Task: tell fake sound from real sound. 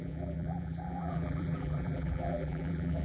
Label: fake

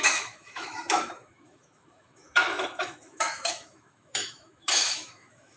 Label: fake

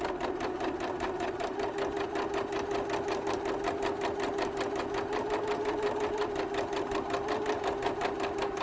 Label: real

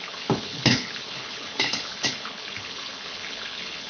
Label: fake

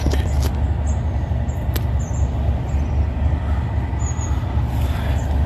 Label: real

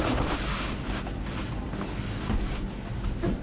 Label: real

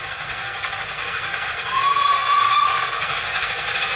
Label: fake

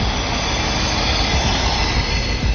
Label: real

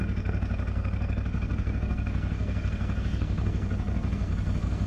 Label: fake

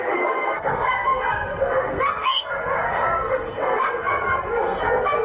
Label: fake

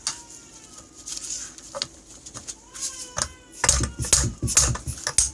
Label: real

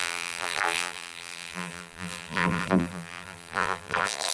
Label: fake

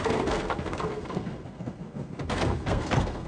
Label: fake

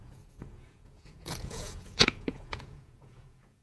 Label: fake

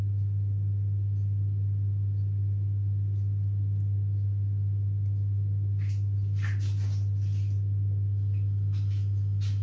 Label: real